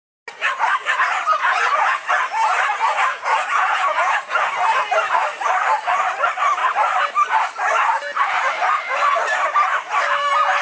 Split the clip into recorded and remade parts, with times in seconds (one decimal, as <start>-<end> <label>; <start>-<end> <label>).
0.0-1.4 recorded; 1.4-2.1 remade; 2.1-3.1 recorded; 3.1-4.5 remade; 4.5-10.6 recorded